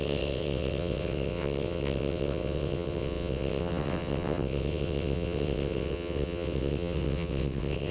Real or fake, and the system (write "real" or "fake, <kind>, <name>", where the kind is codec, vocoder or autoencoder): fake, vocoder, WaveNeXt